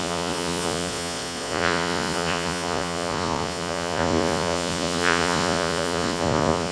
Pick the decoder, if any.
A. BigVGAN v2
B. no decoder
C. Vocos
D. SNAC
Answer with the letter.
C